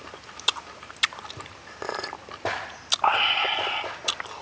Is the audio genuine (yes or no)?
yes